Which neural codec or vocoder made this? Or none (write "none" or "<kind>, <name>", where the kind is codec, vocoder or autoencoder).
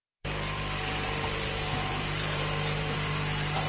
vocoder, BigVGAN v2